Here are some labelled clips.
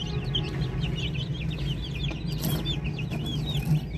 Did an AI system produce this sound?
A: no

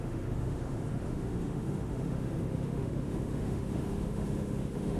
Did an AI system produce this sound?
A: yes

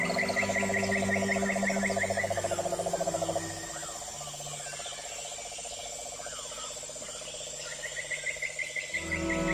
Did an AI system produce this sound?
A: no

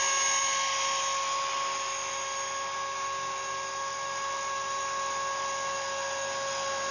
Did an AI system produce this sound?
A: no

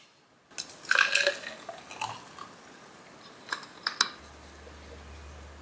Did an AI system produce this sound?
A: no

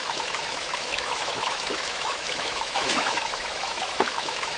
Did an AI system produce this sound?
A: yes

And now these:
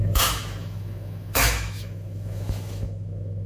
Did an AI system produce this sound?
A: yes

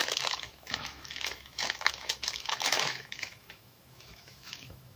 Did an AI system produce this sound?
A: yes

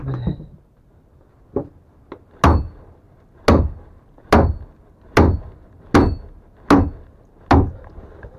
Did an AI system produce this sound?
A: no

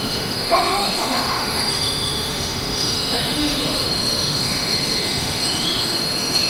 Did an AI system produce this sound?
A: yes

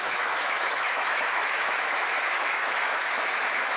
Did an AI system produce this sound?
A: yes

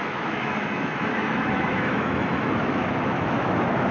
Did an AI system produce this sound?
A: yes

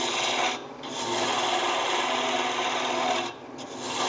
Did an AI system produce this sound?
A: no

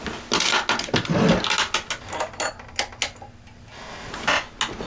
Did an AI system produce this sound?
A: no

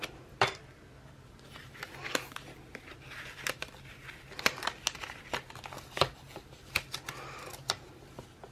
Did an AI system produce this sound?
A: no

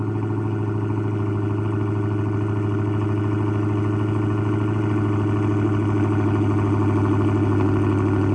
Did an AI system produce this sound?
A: no